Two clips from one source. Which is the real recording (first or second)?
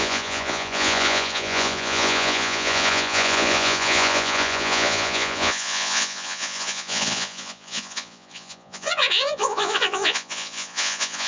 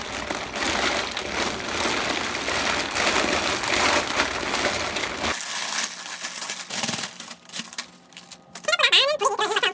second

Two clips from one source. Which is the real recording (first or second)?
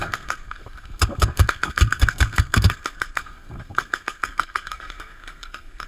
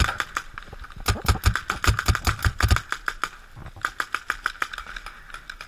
second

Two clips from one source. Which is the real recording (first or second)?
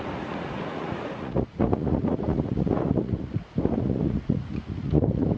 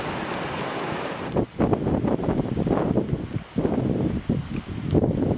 second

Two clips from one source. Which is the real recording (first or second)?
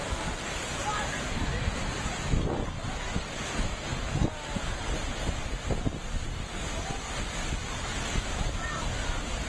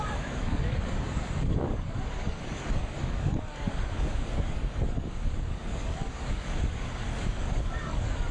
first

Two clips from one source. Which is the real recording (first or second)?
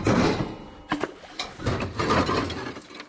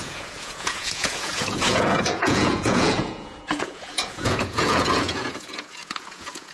first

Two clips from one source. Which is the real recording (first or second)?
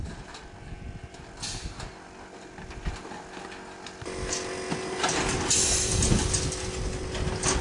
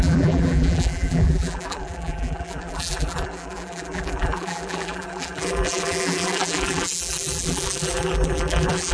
first